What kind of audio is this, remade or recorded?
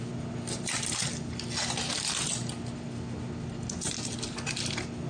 recorded